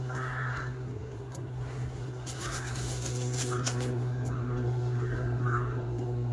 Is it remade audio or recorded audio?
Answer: remade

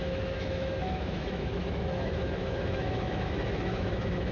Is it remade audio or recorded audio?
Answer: remade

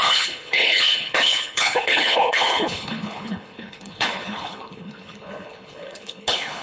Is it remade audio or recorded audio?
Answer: remade